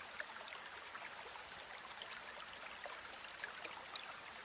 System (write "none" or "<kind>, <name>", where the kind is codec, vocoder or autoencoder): none